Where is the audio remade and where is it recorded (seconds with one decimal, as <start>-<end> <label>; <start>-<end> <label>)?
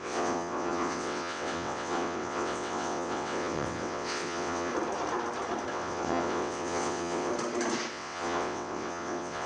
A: 0.0-4.7 remade; 4.7-5.7 recorded; 5.7-7.3 remade; 7.3-7.9 recorded; 7.9-9.5 remade